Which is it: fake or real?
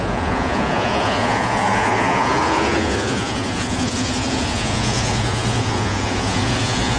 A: fake